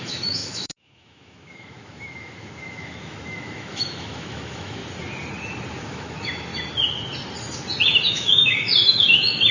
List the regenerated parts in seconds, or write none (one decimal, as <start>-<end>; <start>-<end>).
0.0-4.8; 5.8-6.5; 8.1-9.5